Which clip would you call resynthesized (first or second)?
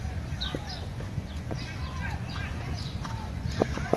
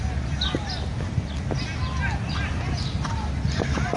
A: first